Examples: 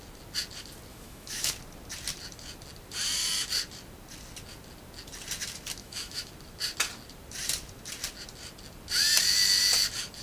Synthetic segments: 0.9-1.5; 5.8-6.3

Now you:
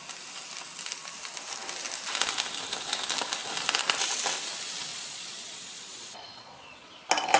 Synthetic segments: 4.9-6.9

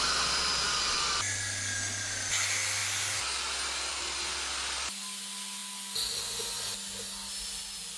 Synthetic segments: none

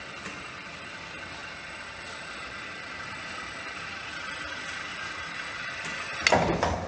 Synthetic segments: 4.9-5.7

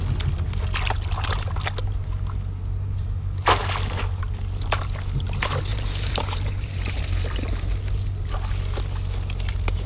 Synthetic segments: 5.7-7.0

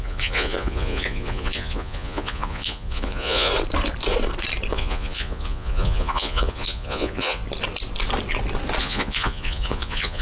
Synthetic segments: 0.0-3.5; 4.7-7.4; 8.8-10.2

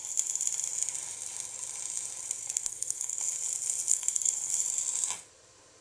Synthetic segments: 2.4-3.2; 3.9-4.5